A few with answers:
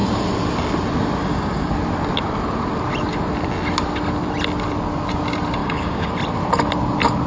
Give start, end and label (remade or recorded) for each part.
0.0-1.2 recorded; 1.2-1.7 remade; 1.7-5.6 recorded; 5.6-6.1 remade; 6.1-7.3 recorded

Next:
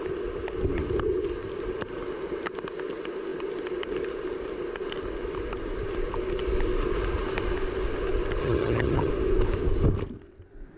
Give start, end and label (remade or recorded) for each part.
0.0-8.4 recorded; 8.4-9.1 remade; 9.1-10.8 recorded

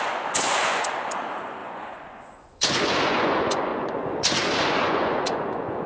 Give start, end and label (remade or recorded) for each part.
0.0-5.9 remade

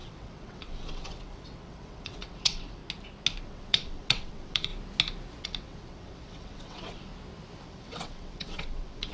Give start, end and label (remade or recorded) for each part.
0.0-2.8 remade; 2.8-3.4 recorded; 3.4-4.7 remade; 4.7-5.4 recorded; 5.4-7.1 remade; 7.1-7.6 recorded; 7.6-9.1 remade

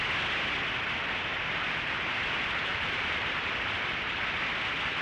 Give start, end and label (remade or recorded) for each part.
0.0-1.3 recorded; 1.3-4.3 remade; 4.3-5.0 recorded